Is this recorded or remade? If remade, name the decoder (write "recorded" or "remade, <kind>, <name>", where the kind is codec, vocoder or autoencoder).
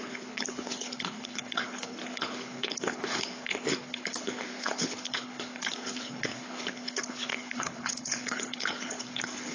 remade, codec, HILCodec